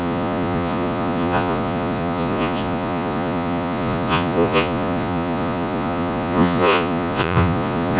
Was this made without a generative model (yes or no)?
no